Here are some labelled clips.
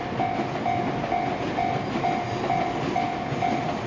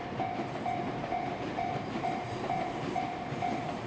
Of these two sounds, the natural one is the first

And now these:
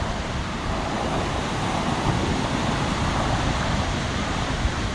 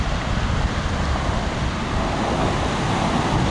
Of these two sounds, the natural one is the second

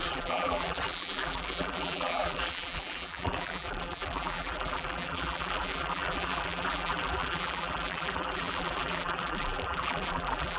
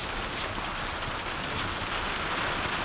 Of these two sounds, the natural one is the second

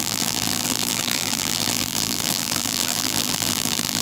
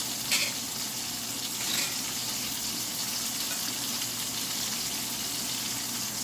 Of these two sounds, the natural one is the second